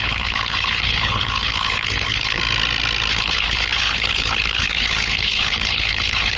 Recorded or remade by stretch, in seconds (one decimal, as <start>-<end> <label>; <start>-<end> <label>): 0.0-2.4 remade; 2.4-3.1 recorded; 3.1-6.4 remade